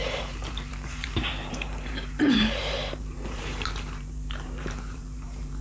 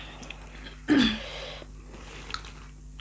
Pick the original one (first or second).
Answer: second